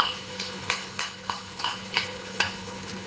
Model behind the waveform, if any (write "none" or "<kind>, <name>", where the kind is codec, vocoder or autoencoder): codec, HILCodec